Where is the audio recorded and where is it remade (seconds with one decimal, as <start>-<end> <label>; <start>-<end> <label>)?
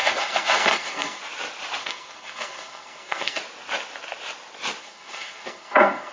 0.0-1.2 remade; 1.2-1.8 recorded; 1.8-3.4 remade; 3.4-4.8 recorded; 4.8-6.1 remade